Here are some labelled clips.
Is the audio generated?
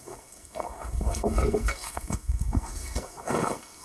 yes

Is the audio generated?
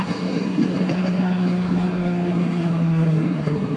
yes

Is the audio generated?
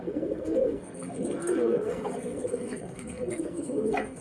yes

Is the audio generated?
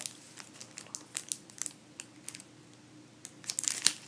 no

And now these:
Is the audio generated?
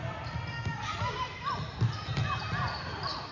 no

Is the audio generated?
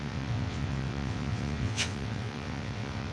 yes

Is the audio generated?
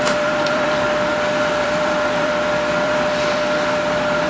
yes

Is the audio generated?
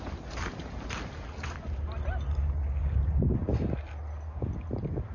no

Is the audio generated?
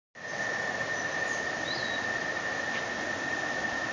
no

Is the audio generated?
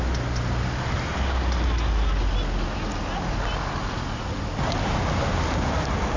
no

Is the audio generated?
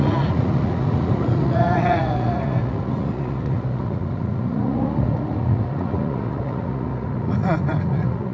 yes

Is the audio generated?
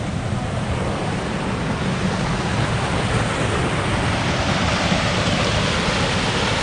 no